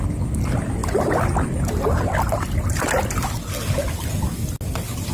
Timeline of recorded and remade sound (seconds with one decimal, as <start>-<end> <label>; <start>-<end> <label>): 0.0-5.1 recorded